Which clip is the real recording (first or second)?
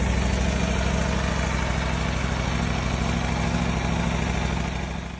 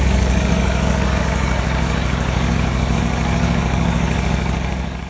first